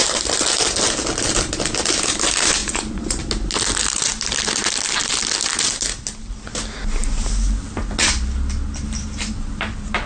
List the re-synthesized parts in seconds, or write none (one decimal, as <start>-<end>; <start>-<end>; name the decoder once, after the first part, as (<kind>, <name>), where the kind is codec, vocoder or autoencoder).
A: 2.6-3.2 (vocoder, Vocos)